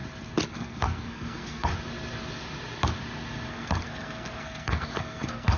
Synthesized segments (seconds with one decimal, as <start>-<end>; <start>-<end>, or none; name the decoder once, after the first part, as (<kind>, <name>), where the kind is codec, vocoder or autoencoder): 0.5-1.7 (codec, SNAC); 3.5-5.6